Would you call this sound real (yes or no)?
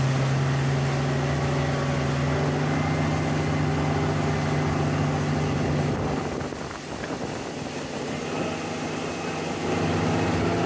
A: yes